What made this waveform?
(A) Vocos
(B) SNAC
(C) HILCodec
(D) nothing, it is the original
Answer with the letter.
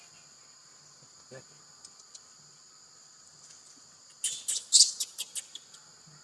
D